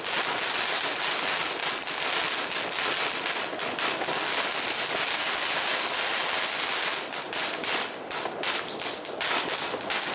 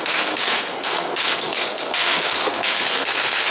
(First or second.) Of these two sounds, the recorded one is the first